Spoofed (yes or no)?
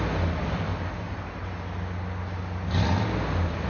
no